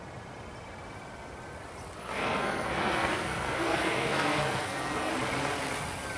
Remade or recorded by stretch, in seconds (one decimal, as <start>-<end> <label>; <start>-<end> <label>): 0.0-2.0 recorded; 2.0-5.1 remade; 5.1-6.2 recorded